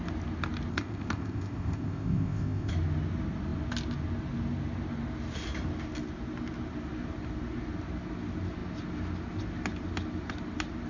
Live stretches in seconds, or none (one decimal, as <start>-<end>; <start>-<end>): 0.0-0.7; 2.7-10.9